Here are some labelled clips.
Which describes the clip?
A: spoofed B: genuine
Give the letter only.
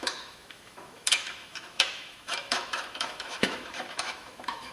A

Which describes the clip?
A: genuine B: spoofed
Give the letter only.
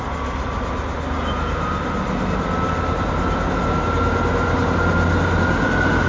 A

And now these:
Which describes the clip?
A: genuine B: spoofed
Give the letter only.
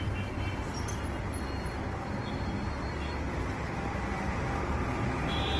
A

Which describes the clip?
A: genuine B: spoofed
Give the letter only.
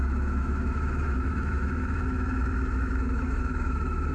B